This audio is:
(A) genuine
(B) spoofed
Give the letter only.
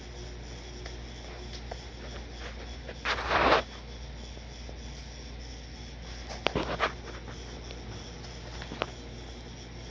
A